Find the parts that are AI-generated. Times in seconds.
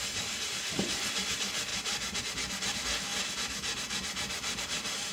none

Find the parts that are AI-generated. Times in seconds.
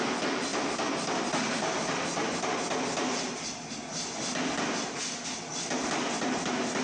none